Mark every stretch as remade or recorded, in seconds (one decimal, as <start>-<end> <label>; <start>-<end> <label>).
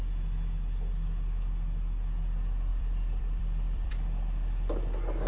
0.0-2.7 recorded; 2.7-3.9 remade; 3.9-5.3 recorded